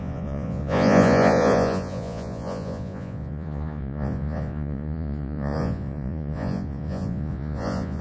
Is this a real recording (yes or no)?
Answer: no